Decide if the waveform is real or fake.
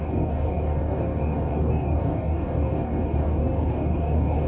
fake